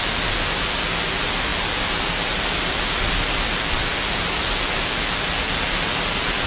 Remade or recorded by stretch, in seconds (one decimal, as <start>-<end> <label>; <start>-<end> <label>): 0.0-6.5 recorded